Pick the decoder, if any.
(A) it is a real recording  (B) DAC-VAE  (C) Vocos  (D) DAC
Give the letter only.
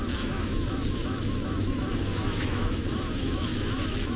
B